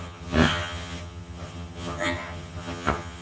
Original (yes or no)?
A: no